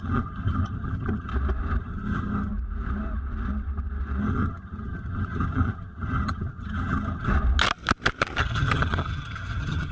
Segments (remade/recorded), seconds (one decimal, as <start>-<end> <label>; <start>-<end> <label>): 0.0-1.3 remade; 1.3-1.8 recorded; 1.8-2.5 remade; 2.5-4.2 recorded; 4.2-7.3 remade; 7.3-8.4 recorded; 8.4-9.9 remade